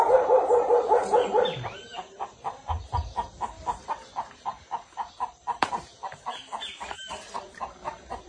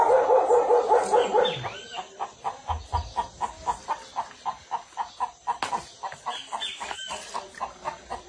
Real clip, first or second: second